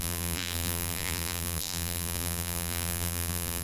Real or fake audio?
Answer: fake